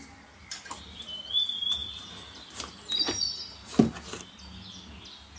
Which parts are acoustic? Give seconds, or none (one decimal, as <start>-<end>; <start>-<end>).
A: 0.0-5.4